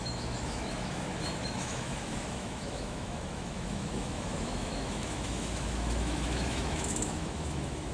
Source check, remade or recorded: remade